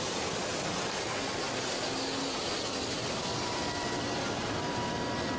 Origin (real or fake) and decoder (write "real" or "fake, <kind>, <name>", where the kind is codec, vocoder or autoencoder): real